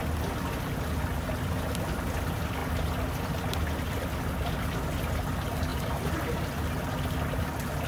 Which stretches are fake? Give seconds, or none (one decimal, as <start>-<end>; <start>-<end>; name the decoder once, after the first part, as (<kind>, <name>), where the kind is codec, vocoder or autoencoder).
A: none

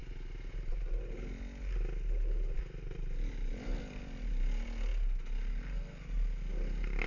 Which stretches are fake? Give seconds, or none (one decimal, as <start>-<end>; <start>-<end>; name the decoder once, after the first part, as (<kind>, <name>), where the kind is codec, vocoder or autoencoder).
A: none

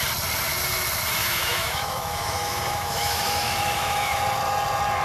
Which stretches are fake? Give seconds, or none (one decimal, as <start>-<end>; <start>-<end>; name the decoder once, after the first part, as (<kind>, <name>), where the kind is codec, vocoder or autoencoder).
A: 1.2-4.2 (autoencoder, DAC-VAE)

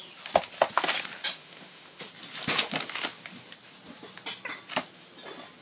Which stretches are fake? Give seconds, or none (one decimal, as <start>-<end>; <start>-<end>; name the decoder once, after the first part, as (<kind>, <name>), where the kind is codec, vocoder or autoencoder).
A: 1.4-2.1 (autoencoder, DAC-VAE)